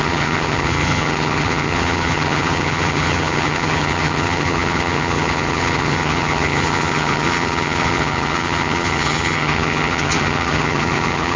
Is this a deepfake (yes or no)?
yes